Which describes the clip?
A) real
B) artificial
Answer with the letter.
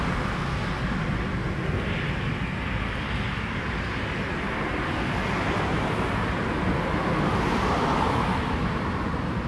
A